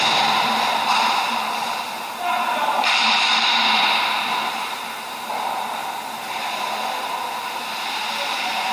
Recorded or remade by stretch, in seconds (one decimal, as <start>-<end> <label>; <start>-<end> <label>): 0.0-5.8 remade; 5.8-6.3 recorded; 6.3-8.7 remade